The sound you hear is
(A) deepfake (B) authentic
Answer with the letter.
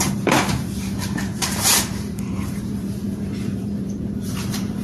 A